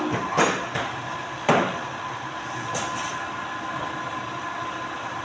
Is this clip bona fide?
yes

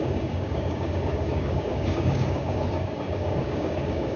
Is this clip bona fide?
no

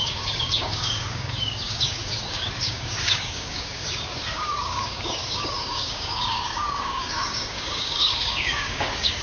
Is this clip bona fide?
no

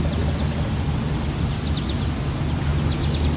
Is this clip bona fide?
yes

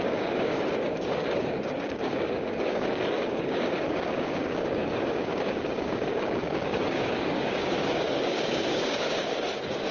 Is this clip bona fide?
no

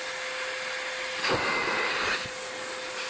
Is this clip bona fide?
yes